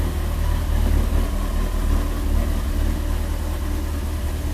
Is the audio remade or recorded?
recorded